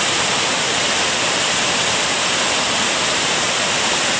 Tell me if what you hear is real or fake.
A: fake